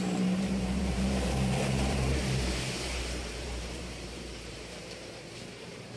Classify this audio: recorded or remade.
remade